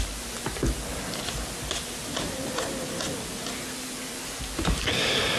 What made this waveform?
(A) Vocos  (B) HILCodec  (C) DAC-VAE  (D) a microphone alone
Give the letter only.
D